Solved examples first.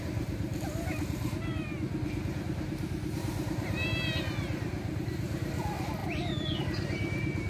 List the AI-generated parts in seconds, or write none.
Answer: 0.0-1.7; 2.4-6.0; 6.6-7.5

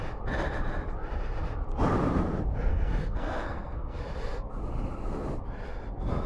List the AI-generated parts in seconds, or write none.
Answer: 2.7-4.0

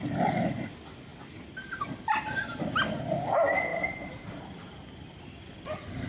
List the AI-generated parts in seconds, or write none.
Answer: none

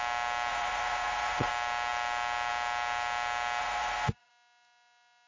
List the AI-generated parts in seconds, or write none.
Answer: 0.5-1.5; 3.6-4.3